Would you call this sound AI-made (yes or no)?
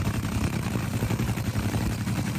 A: yes